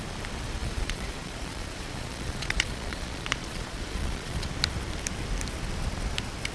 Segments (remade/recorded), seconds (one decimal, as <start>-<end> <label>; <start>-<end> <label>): 0.0-0.6 recorded; 0.6-4.5 remade; 4.5-6.5 recorded